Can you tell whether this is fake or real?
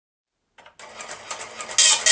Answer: real